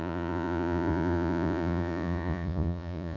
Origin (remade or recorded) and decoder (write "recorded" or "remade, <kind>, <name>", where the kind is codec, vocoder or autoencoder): remade, vocoder, Vocos